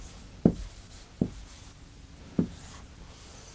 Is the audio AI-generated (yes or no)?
yes